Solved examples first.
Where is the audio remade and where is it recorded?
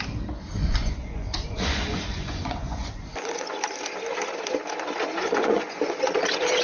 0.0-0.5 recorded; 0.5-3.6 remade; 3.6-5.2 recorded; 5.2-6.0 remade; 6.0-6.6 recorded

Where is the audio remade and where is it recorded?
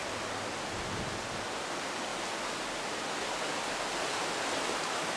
0.0-5.2 recorded